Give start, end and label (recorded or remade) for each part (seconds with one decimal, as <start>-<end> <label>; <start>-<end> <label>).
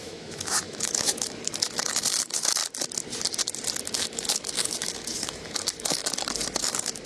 0.0-2.6 remade; 2.6-3.8 recorded; 3.8-6.0 remade; 6.0-6.6 recorded; 6.6-7.1 remade